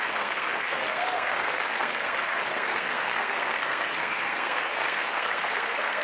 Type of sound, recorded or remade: remade